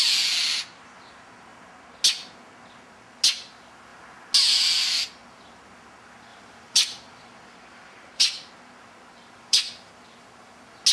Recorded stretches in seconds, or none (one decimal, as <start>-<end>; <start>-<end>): 0.0-6.3; 9.9-10.9